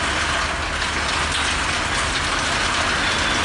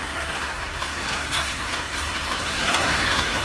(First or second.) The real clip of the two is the first